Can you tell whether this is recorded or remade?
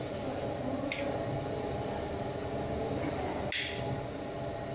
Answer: recorded